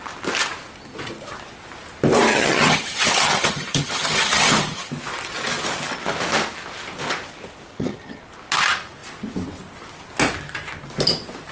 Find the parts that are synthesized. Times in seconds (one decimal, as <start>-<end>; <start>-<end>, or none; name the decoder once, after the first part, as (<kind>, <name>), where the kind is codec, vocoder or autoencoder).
2.3-4.9 (vocoder, HiFi-GAN); 7.7-8.2